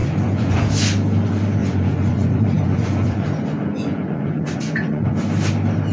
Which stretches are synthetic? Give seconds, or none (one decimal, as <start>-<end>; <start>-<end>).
0.0-0.6; 1.6-5.1